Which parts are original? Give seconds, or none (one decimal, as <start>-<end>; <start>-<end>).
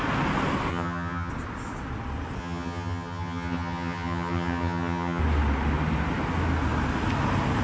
0.0-0.7; 1.3-2.4; 5.2-7.6